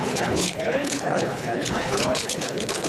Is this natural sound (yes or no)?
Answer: no